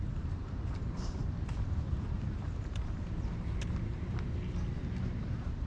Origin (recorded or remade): remade